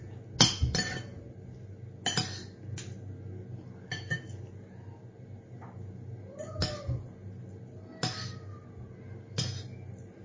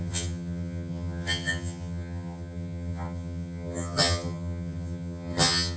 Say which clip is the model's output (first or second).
second